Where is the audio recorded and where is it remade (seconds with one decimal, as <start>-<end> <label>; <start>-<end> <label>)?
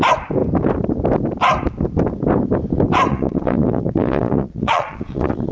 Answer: 0.0-3.1 recorded; 3.1-5.5 remade